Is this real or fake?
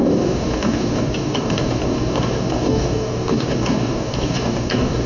fake